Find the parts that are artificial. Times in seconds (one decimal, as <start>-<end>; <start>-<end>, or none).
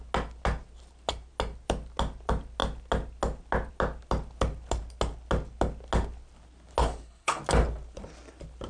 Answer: 6.8-7.4